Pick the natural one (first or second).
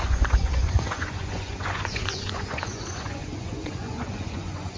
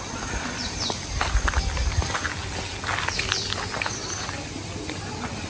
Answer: second